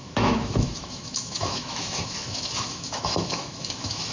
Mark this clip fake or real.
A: fake